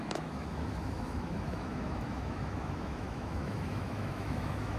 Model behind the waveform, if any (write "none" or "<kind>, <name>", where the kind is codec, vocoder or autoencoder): autoencoder, DAC-VAE